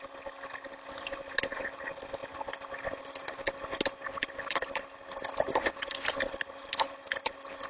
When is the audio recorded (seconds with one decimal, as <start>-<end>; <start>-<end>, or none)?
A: 0.0-7.7